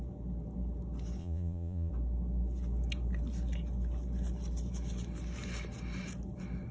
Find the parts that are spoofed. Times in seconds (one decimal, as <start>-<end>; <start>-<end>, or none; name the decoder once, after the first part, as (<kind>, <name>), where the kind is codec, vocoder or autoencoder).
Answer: 1.2-1.9 (vocoder, Vocos)